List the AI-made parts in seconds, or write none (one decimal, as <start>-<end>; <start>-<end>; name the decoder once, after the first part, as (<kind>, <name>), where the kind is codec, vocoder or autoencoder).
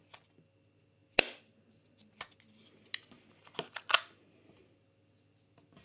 none